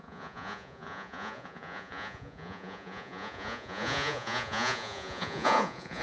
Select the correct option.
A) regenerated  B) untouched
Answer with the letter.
A